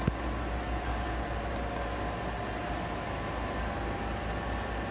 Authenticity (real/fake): real